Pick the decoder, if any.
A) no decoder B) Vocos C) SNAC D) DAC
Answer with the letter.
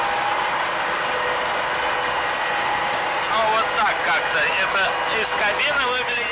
A